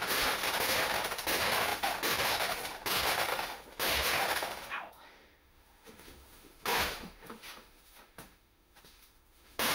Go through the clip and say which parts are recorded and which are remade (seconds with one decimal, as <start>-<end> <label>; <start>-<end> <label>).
0.0-9.7 remade